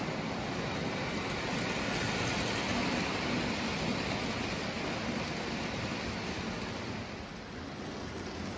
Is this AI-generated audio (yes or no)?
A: no